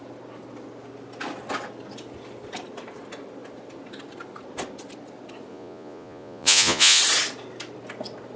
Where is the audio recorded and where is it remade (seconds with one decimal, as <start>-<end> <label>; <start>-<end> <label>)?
0.0-5.5 recorded; 5.5-7.0 remade; 7.0-8.4 recorded